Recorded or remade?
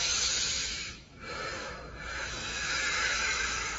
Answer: remade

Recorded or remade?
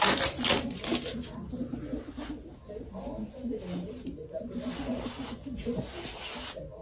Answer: recorded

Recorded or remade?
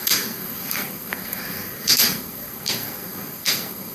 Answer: remade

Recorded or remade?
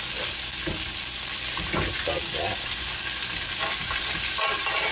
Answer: recorded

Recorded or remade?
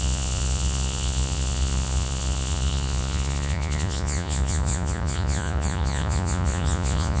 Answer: remade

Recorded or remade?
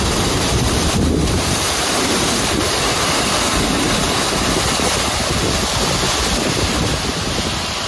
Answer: remade